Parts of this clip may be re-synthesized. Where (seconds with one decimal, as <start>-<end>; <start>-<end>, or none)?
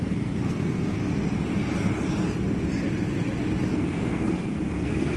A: 0.0-1.0; 3.7-5.2